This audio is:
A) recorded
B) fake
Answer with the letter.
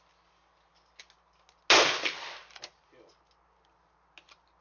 A